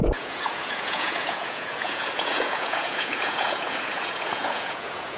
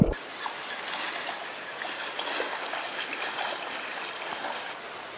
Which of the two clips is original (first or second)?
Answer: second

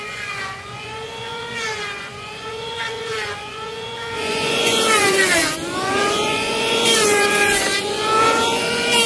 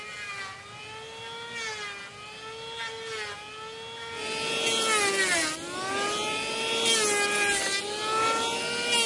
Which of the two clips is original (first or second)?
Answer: second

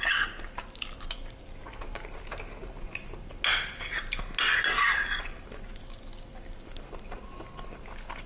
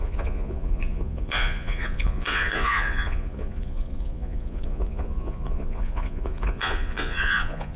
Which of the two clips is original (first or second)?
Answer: first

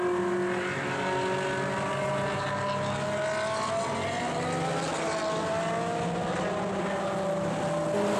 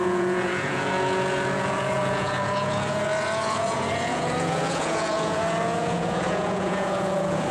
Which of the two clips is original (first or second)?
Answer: first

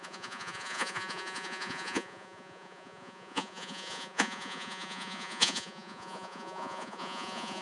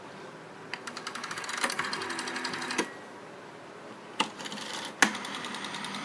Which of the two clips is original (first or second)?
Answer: second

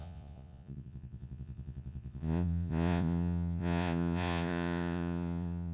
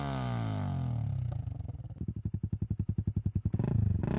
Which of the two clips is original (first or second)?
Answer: second